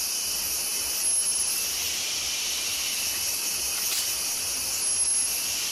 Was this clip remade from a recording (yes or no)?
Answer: no